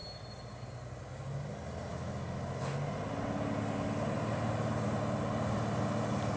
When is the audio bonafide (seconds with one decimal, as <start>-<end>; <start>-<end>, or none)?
0.0-1.9; 2.6-6.4